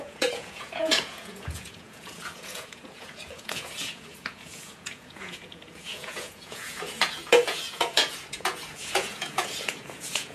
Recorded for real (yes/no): no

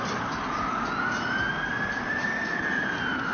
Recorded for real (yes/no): yes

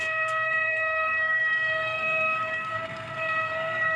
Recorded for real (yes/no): no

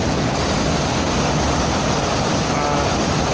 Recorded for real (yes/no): yes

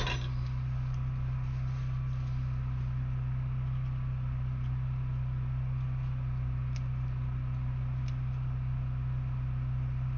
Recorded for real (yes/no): yes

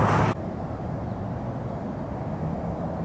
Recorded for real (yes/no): yes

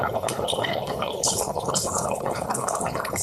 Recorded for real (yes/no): no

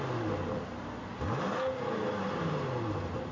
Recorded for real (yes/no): yes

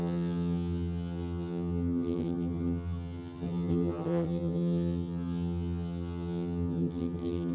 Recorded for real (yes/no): no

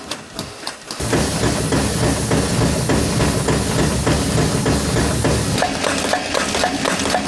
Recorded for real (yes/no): yes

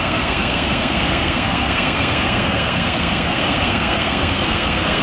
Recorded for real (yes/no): no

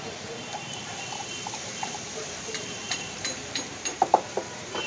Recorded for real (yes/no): no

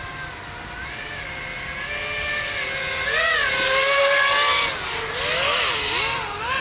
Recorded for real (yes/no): yes